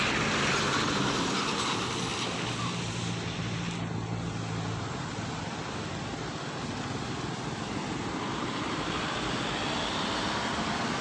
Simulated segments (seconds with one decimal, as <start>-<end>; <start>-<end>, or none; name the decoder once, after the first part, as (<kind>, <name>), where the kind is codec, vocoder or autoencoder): none